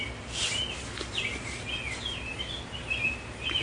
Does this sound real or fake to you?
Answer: real